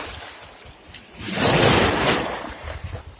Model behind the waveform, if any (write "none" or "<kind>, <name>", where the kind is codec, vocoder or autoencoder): none